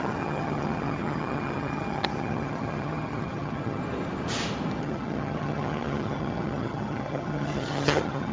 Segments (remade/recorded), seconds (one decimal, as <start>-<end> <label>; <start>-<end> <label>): 0.0-3.8 remade; 3.8-4.8 recorded; 4.8-8.3 remade